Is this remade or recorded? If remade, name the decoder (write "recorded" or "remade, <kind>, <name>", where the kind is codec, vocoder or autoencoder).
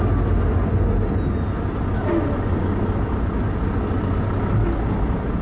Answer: recorded